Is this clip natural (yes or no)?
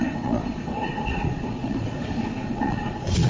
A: no